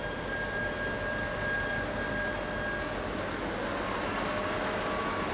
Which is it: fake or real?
real